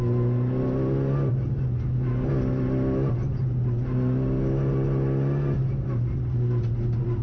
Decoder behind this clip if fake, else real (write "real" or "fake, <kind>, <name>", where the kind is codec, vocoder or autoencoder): real